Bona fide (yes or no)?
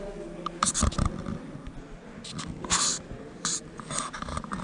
yes